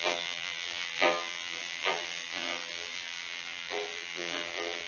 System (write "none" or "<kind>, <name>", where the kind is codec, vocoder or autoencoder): vocoder, BigVGAN v2